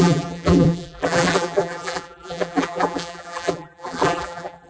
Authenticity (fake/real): fake